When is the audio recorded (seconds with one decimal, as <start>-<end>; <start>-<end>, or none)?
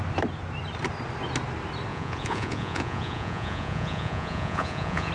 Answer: 0.0-1.9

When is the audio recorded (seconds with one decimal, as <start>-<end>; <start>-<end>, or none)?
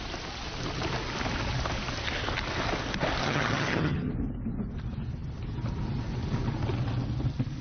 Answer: 0.0-3.2; 4.1-7.6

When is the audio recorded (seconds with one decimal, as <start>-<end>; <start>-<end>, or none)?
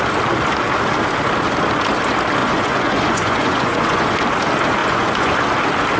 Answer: 0.0-2.4; 4.2-4.8; 5.4-6.0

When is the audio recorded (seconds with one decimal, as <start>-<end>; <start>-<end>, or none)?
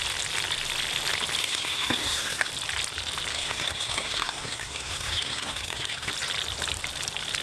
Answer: 0.0-1.4; 2.5-3.3; 6.1-7.4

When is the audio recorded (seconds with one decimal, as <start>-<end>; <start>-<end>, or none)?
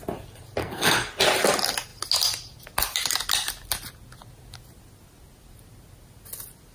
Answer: 0.0-0.6; 1.1-6.7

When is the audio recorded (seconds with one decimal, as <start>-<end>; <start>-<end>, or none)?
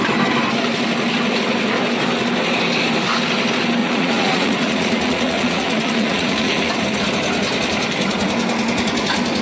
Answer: 0.0-3.8; 6.7-9.4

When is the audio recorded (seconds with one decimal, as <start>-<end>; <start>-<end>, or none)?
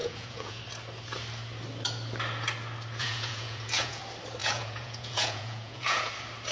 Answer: 0.6-3.0; 4.0-4.4; 6.1-6.5